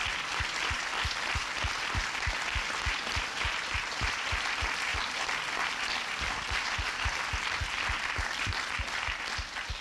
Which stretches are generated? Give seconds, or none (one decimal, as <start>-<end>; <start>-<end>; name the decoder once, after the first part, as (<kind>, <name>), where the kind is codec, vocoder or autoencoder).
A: 3.4-4.9 (vocoder, BigVGAN v2); 6.2-9.8